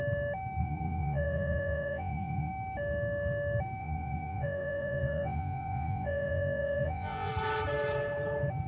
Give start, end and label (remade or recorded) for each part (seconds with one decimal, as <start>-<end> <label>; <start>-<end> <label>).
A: 0.0-0.6 recorded; 0.6-2.5 remade; 2.5-3.8 recorded; 3.8-7.3 remade; 7.3-8.7 recorded